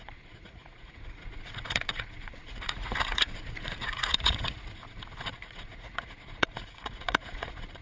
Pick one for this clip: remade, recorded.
remade